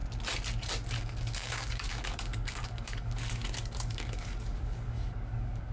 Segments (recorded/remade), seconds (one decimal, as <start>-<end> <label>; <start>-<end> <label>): 0.0-1.0 recorded; 1.0-5.7 remade